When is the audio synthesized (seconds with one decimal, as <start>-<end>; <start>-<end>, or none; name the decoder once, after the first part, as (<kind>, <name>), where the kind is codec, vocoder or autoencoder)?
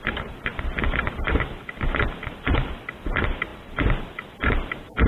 none